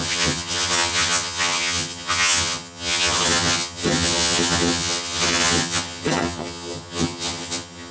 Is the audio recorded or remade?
remade